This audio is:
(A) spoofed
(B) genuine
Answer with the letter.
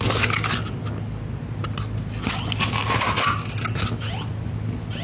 B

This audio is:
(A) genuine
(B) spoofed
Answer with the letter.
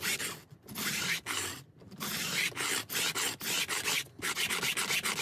A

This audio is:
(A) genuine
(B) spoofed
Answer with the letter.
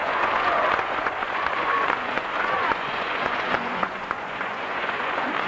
B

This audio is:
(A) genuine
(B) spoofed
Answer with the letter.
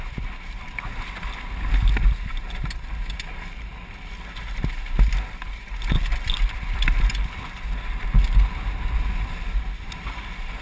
A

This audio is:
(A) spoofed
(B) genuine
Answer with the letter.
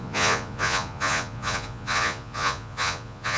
A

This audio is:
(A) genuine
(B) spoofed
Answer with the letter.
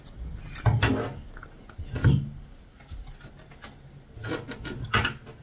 A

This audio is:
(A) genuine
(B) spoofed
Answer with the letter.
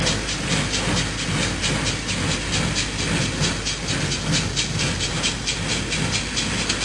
A